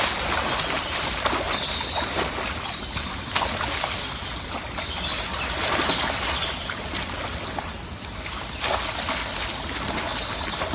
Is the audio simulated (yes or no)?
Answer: no